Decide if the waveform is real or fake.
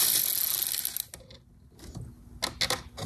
real